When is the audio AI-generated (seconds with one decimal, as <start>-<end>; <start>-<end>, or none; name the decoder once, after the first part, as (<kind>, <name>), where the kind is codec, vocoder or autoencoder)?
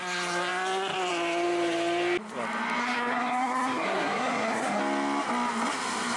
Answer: 2.8-4.8 (codec, SNAC)